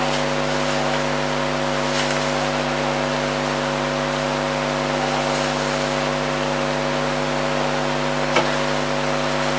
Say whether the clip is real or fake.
real